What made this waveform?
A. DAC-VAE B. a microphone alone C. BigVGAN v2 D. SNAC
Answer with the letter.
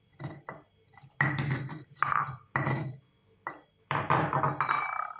C